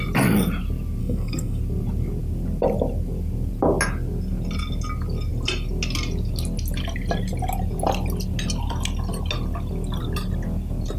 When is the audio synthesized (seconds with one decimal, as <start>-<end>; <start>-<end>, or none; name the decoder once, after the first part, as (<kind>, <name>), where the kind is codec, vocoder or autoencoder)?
1.0-1.6 (codec, SNAC)